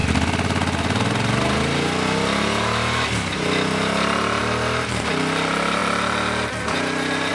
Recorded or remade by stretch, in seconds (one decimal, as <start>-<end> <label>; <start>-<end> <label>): 0.0-7.3 recorded